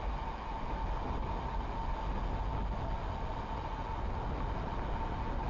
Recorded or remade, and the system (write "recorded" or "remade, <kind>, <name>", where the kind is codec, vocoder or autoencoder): recorded